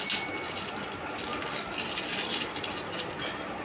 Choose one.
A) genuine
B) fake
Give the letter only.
A